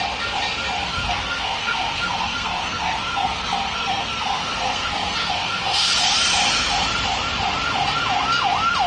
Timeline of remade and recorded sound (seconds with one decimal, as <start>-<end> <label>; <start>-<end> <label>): 0.0-0.8 recorded; 0.8-5.9 remade; 5.9-8.9 recorded